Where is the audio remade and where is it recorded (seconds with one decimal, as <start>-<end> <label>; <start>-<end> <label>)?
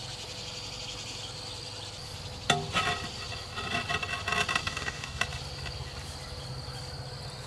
0.0-4.6 recorded; 4.6-5.2 remade; 5.2-7.5 recorded